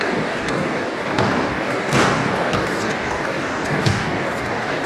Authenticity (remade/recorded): remade